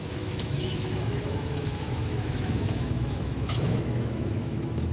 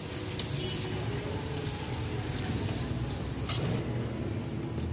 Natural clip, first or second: second